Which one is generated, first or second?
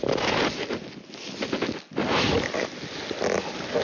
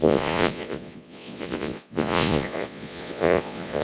second